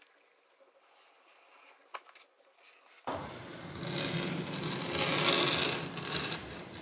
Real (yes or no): yes